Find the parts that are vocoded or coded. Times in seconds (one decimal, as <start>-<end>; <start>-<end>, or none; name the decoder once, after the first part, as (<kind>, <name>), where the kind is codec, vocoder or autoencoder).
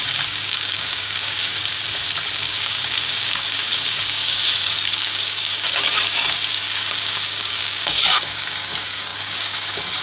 0.0-10.0 (codec, DAC)